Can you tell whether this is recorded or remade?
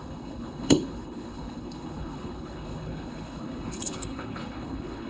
remade